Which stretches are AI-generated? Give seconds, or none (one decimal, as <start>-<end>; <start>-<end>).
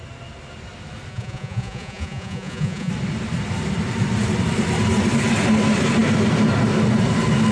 1.1-2.9